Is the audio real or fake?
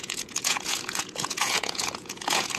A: fake